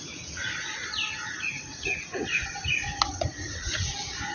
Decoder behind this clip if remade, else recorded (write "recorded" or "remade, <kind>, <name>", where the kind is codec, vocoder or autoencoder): remade, vocoder, Vocos